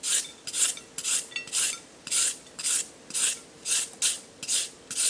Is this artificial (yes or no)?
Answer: no